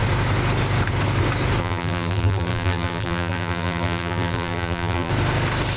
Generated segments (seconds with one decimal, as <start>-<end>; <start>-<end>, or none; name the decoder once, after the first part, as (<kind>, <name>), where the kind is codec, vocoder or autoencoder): 1.6-5.1 (vocoder, BigVGAN v2)